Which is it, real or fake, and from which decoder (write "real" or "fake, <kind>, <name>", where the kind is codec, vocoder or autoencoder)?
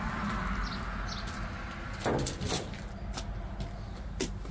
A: real